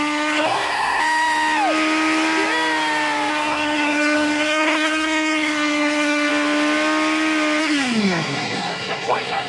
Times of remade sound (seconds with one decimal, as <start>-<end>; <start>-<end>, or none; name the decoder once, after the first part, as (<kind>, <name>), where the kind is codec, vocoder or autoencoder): 0.0-1.0 (codec, SNAC); 3.3-6.3; 7.6-9.5